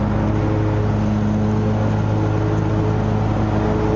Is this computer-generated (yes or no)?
no